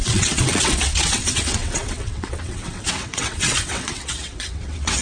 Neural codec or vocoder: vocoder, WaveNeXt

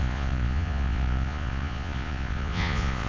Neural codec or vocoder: vocoder, Vocos